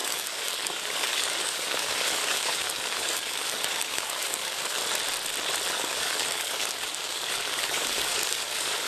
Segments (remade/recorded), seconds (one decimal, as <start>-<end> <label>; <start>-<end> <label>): 0.0-4.8 remade; 4.8-5.7 recorded; 5.7-8.9 remade